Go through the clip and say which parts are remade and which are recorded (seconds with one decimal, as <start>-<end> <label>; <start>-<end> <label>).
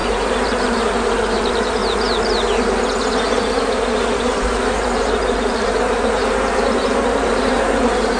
0.0-1.8 remade; 1.8-3.4 recorded; 3.4-8.2 remade